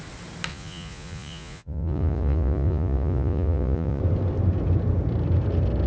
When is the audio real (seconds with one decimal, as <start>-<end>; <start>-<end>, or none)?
0.0-0.5; 4.0-5.9